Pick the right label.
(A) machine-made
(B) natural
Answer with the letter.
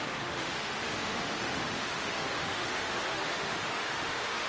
A